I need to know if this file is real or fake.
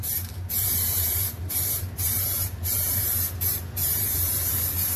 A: fake